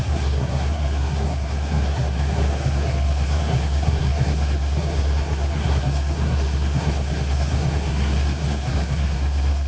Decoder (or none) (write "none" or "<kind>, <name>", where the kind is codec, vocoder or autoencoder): codec, SNAC